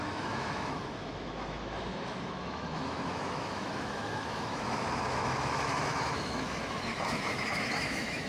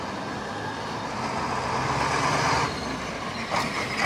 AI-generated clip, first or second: first